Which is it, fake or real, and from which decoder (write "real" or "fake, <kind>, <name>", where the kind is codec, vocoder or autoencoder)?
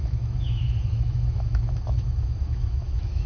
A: fake, autoencoder, DAC-VAE